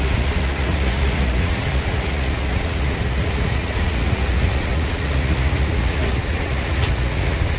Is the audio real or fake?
fake